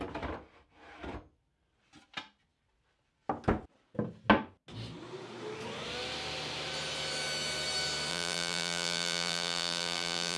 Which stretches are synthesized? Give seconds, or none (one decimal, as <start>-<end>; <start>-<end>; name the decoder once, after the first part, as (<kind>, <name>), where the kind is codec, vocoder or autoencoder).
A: 8.1-10.4 (vocoder, BigVGAN v2)